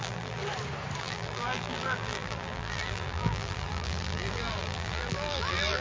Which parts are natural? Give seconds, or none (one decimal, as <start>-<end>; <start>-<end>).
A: 0.4-1.0